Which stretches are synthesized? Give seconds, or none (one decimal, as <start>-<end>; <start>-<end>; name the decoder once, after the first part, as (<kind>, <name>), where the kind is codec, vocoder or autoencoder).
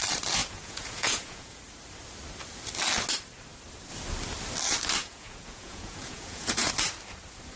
0.4-1.6 (vocoder, Vocos); 5.0-6.7